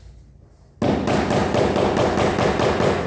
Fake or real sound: real